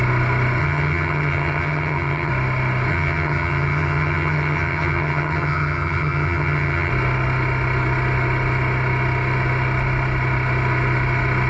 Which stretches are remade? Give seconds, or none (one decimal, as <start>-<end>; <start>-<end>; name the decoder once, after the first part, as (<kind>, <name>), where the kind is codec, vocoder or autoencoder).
0.6-2.3 (vocoder, HiFi-GAN); 2.9-6.9

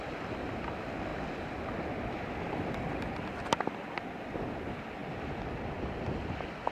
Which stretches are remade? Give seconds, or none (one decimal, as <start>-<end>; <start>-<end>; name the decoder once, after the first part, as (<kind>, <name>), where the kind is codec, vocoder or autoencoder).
none

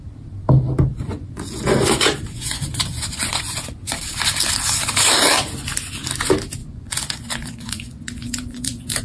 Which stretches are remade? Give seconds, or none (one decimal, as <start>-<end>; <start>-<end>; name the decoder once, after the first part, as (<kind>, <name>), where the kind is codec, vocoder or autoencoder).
0.9-3.9 (vocoder, Vocos); 6.6-9.0

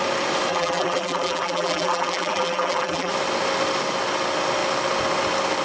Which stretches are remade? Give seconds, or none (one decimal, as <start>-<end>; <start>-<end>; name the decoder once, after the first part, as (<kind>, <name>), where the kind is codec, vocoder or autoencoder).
0.5-3.1 (vocoder, BigVGAN v2)

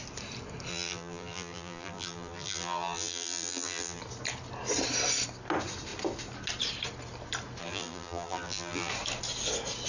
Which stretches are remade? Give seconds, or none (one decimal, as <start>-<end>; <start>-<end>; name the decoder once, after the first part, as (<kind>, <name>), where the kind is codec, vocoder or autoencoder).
0.7-4.0 (vocoder, BigVGAN v2); 7.6-8.9